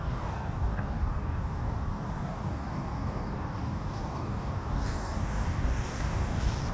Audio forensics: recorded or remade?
remade